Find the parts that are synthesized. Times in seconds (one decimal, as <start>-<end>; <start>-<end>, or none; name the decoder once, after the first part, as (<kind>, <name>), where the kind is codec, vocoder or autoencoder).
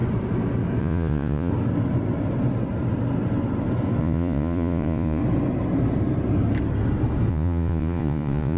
0.8-1.5 (vocoder, Vocos); 4.0-5.2; 7.3-8.6